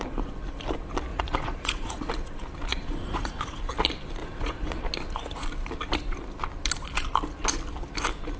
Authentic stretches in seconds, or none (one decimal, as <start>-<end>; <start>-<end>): 0.0-1.1; 2.1-2.7; 3.6-4.2; 4.8-8.4